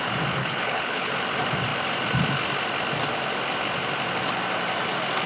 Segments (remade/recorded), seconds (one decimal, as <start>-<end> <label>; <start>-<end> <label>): 0.0-0.4 recorded; 0.4-1.1 remade; 1.1-5.3 recorded